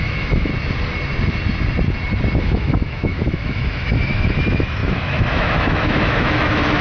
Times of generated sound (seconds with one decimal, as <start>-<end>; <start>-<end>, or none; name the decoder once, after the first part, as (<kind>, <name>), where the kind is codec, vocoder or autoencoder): 0.0-0.5 (autoencoder, DAC-VAE); 2.4-6.8